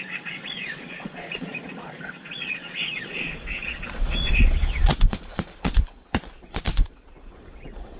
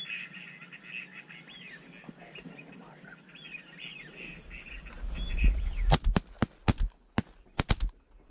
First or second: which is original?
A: second